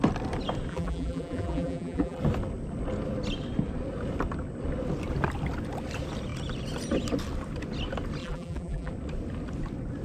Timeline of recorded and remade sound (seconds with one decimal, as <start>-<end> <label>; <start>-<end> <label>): 0.0-0.7 recorded; 0.7-2.2 remade; 2.2-8.2 recorded; 8.2-8.9 remade; 8.9-10.0 recorded